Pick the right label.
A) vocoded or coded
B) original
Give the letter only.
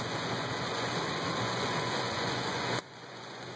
A